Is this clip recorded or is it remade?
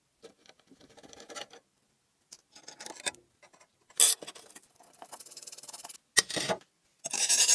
recorded